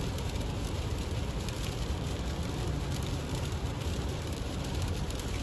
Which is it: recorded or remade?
remade